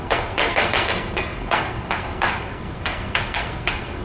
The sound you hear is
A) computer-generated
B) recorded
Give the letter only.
A